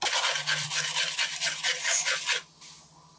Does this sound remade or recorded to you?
recorded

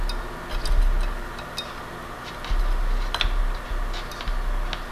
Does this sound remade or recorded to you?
recorded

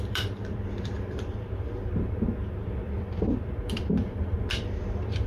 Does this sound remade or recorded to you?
remade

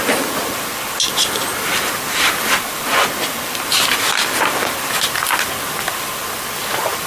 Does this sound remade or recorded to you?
remade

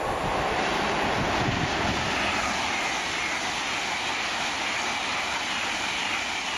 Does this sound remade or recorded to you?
recorded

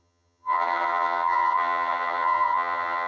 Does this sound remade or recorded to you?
remade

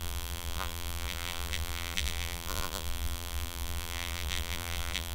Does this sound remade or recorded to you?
remade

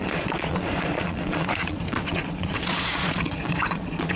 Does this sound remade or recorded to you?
remade